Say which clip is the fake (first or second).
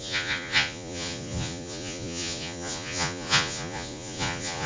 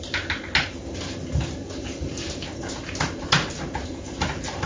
first